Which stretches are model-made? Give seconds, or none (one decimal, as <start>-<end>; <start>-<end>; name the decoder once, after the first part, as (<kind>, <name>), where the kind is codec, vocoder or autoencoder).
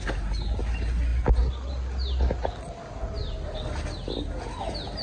none